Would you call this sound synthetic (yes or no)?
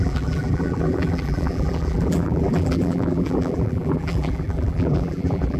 yes